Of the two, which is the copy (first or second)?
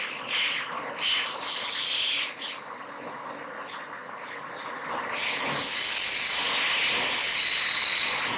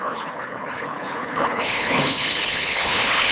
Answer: second